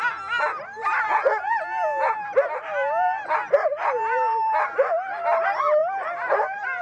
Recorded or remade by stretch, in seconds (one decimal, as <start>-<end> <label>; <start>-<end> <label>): 0.0-6.8 recorded